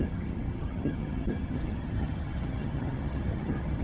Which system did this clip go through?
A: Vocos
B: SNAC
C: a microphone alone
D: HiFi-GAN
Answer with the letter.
D